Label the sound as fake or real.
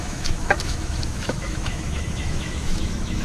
fake